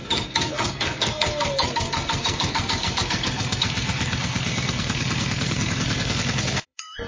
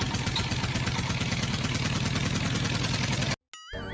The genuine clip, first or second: second